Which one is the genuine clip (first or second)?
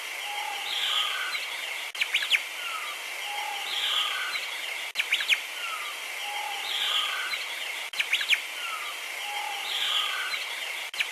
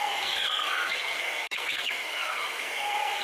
first